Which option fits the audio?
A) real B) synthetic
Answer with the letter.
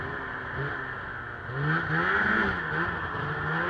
A